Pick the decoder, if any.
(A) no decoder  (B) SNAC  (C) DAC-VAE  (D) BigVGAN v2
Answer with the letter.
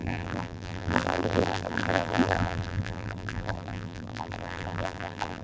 D